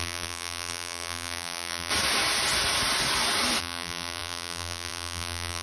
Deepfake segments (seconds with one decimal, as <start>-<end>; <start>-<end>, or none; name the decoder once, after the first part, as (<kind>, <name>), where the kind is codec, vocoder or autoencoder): 0.0-1.9 (vocoder, BigVGAN v2); 3.6-5.6

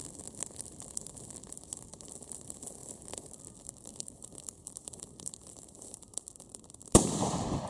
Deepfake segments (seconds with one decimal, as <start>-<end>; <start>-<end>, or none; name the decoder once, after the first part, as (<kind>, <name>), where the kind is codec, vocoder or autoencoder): 2.8-7.7 (vocoder, BigVGAN v2)